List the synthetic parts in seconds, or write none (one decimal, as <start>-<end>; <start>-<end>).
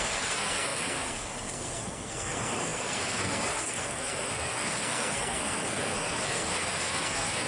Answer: 0.0-7.5